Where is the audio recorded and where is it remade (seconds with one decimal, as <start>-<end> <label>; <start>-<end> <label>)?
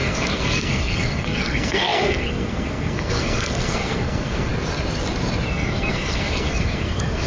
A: 0.0-4.5 remade; 4.5-5.5 recorded; 5.5-7.3 remade